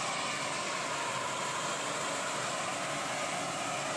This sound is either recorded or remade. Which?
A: recorded